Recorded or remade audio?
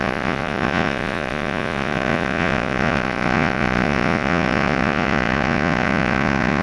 remade